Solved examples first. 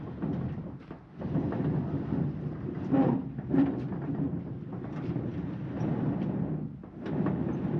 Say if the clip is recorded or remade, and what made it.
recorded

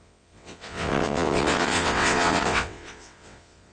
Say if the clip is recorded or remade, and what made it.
remade, vocoder, WaveNeXt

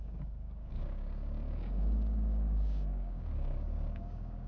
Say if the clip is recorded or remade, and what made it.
remade, codec, DAC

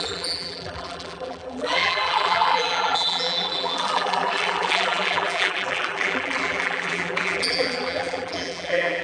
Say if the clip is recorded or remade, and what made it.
remade, vocoder, BigVGAN v2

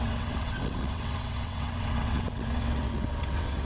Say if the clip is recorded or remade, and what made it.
remade, vocoder, WaveNeXt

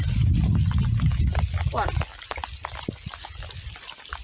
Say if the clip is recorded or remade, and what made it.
recorded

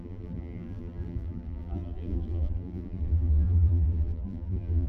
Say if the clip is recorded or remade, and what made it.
remade, vocoder, BigVGAN v2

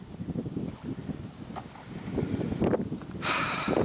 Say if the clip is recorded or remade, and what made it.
recorded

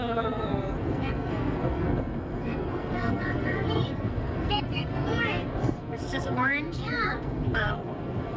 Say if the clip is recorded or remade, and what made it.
remade, codec, SNAC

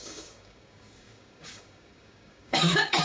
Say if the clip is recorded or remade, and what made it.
remade, codec, DAC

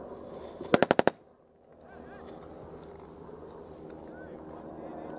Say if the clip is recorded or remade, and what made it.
recorded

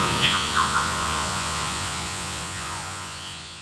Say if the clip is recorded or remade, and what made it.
remade, vocoder, Vocos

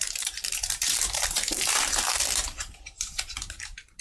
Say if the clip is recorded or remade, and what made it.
remade, vocoder, BigVGAN v2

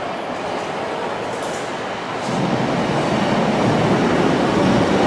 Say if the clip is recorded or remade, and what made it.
recorded